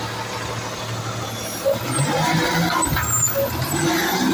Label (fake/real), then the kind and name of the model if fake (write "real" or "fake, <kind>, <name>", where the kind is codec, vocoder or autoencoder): real